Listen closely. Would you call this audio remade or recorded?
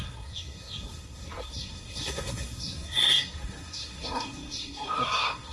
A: remade